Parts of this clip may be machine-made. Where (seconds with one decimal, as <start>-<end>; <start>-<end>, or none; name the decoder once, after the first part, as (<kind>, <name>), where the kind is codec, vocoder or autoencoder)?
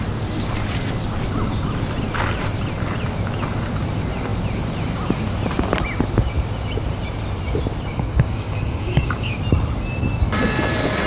7.9-9.4 (codec, DAC)